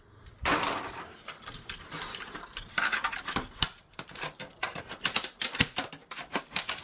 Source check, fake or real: fake